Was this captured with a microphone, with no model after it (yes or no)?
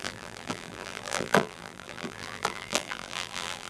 no